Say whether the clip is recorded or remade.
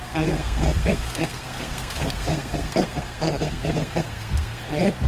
remade